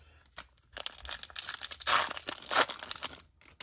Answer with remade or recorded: recorded